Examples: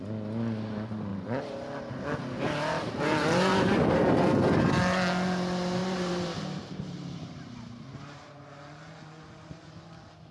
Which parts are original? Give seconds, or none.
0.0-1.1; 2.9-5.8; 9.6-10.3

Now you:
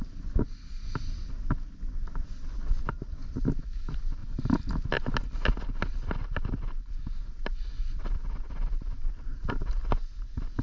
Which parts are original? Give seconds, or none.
0.0-4.2; 4.7-10.6

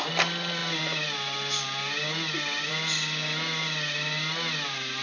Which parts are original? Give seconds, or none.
0.0-5.0